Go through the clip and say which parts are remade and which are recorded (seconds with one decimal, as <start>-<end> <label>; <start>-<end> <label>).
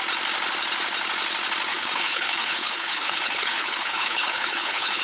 0.0-1.7 recorded; 1.7-5.0 remade